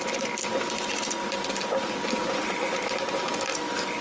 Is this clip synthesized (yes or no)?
no